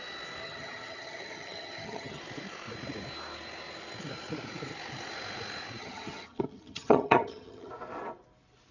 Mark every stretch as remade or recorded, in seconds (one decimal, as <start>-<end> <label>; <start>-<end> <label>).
0.0-0.4 recorded; 0.4-2.2 remade; 2.2-5.8 recorded; 5.8-7.7 remade; 7.7-8.7 recorded